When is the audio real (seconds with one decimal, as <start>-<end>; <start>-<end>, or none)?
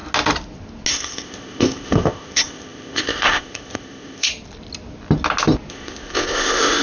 0.0-0.9; 4.3-5.7